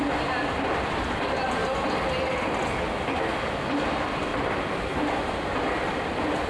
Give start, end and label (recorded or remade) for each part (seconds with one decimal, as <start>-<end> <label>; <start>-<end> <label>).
0.0-1.6 remade; 1.6-3.7 recorded; 3.7-4.3 remade; 4.3-5.3 recorded; 5.3-6.5 remade